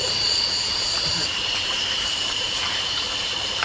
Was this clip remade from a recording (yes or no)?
yes